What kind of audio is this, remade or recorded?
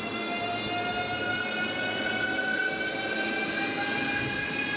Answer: recorded